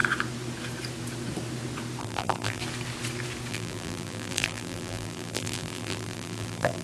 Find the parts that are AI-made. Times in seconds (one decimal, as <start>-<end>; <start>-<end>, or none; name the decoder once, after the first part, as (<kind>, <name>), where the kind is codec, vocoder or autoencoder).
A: 2.0-2.6 (vocoder, BigVGAN v2); 3.5-6.8